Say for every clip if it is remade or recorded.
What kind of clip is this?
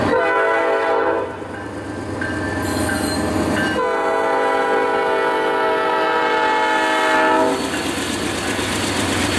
recorded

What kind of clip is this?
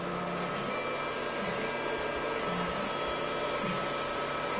recorded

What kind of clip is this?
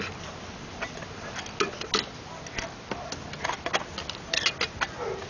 recorded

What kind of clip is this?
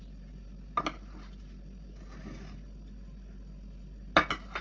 recorded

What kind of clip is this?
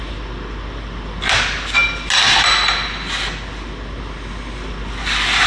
recorded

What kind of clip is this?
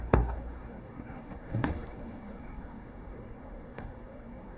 remade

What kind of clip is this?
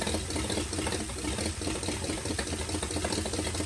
recorded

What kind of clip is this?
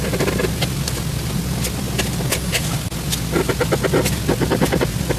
recorded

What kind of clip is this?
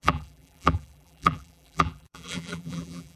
remade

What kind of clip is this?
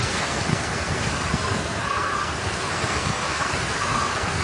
remade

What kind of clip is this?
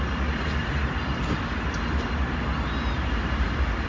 recorded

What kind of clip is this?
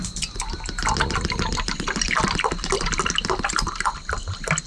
recorded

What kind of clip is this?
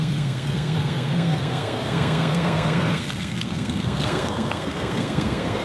remade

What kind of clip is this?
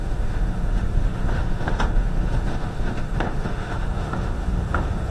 remade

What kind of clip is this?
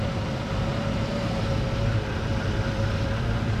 remade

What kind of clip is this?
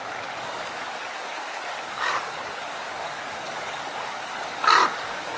remade